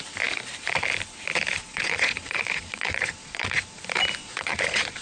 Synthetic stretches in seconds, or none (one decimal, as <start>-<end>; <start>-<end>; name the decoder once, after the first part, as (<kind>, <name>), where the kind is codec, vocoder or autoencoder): 1.7-3.8 (vocoder, Vocos); 4.2-5.0